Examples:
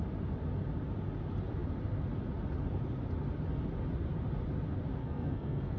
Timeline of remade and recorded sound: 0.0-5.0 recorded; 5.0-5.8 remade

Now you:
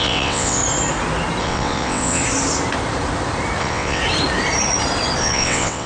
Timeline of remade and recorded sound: 0.0-0.6 remade; 0.6-1.4 recorded; 1.4-2.2 remade; 2.2-3.6 recorded; 3.6-4.0 remade; 4.0-5.2 recorded; 5.2-5.9 remade

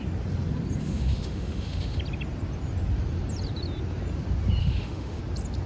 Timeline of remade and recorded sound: 0.0-0.8 recorded; 0.8-2.0 remade; 2.0-4.6 recorded; 4.6-5.2 remade; 5.2-5.7 recorded

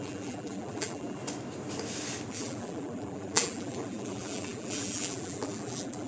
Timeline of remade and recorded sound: 0.0-1.2 remade; 1.2-2.3 recorded; 2.3-6.1 remade

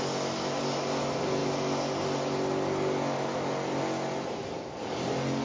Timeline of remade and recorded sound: 0.0-5.4 recorded

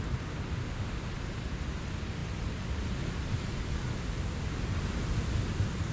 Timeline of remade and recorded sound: 0.0-0.6 recorded; 0.6-1.1 remade; 1.1-5.9 recorded

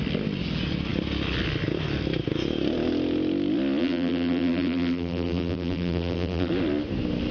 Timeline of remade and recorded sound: 0.0-3.8 recorded; 3.8-6.5 remade; 6.5-7.3 recorded

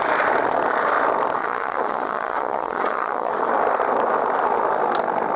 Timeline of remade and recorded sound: 0.0-1.4 recorded; 1.4-3.3 remade; 3.3-5.4 recorded